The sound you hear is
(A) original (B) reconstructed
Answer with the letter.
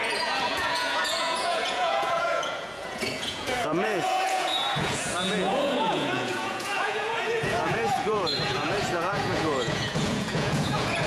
B